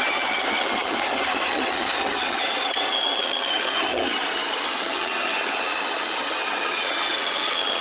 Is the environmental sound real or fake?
fake